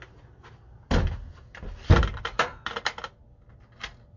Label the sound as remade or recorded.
recorded